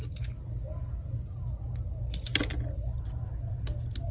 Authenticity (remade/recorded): recorded